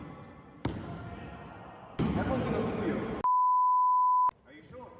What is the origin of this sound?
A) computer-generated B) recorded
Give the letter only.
B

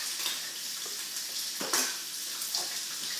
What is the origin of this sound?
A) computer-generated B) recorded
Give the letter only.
B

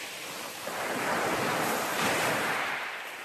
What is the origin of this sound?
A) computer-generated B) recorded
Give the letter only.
A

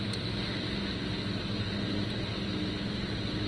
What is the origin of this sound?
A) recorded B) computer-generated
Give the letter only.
A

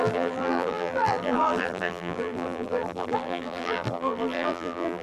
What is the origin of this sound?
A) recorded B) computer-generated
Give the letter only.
B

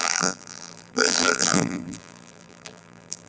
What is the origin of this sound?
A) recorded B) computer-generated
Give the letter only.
B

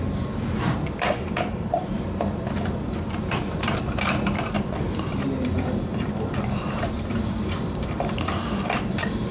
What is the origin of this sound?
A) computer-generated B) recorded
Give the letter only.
A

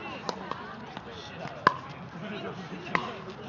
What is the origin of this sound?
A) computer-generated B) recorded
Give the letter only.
B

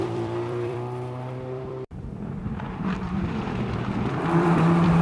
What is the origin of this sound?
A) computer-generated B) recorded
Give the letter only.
A